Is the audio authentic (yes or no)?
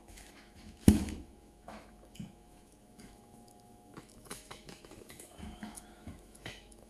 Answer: no